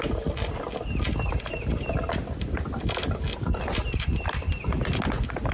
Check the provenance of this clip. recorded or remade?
recorded